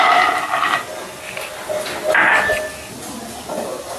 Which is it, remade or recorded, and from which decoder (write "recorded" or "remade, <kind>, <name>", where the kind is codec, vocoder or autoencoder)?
recorded